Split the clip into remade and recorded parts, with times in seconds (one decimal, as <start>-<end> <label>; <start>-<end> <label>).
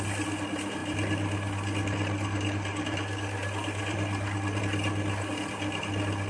0.0-6.3 recorded